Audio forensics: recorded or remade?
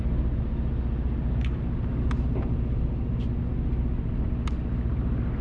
recorded